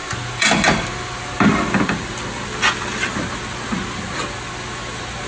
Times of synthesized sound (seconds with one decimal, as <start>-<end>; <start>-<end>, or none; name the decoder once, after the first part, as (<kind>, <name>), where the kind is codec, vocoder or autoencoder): none